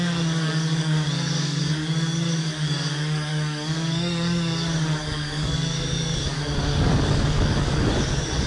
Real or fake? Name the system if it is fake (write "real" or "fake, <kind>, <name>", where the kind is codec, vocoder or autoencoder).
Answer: fake, codec, DAC